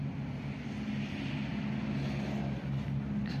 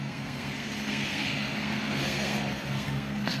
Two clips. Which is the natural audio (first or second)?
first